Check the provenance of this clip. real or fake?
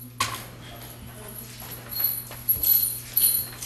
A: real